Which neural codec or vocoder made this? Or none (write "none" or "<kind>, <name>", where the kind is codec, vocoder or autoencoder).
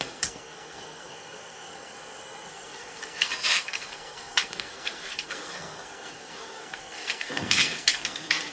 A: codec, SNAC